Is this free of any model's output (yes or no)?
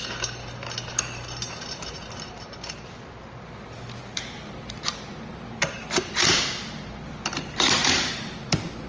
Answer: yes